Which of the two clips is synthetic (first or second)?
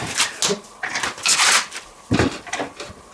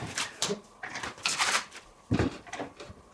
second